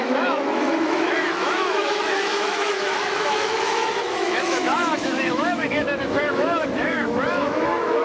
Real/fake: fake